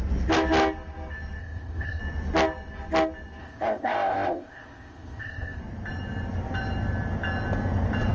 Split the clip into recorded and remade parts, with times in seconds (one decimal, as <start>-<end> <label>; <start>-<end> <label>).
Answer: 0.0-1.4 recorded; 1.4-2.0 remade; 2.0-3.4 recorded; 3.4-5.6 remade; 5.6-8.1 recorded